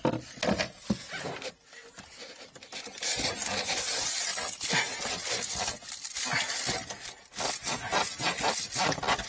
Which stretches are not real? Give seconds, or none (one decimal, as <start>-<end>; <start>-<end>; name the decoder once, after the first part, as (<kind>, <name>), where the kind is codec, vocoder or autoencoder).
none